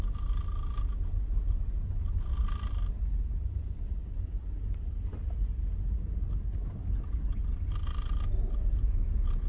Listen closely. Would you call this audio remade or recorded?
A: recorded